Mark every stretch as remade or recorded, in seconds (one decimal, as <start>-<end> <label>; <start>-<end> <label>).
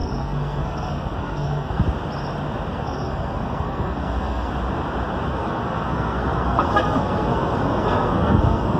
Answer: 0.0-1.8 remade; 1.8-2.7 recorded; 2.7-4.5 remade; 4.5-5.3 recorded; 5.3-8.8 remade